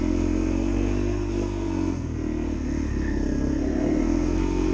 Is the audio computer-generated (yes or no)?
yes